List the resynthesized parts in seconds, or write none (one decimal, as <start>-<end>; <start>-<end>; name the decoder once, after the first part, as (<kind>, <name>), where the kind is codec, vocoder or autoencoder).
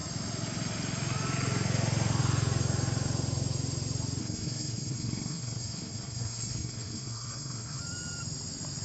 4.2-7.8 (codec, SNAC)